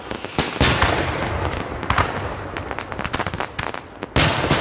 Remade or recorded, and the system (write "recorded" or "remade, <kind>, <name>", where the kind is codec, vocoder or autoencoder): recorded